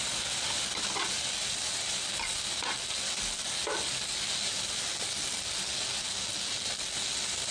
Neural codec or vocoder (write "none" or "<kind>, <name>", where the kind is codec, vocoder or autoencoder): none